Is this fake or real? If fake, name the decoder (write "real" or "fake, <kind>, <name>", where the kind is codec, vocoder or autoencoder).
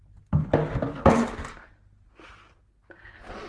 real